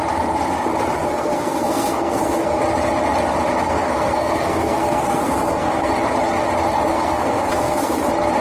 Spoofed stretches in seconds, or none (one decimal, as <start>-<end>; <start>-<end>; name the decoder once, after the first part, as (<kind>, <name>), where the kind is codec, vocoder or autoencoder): 1.0-2.6 (codec, SNAC); 3.5-5.9; 6.9-8.0